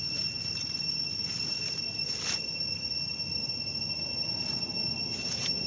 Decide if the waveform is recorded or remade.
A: recorded